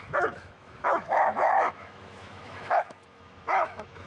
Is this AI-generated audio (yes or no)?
yes